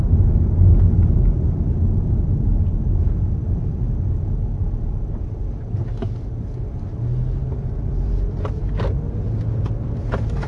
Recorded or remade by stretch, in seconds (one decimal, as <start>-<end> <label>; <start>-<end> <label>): 0.0-7.4 recorded; 7.4-8.6 remade; 8.6-10.5 recorded